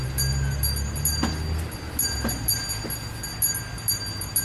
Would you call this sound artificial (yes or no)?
no